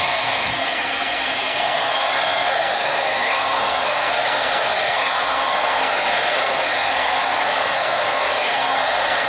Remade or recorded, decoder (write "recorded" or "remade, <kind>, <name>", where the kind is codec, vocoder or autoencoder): remade, codec, SNAC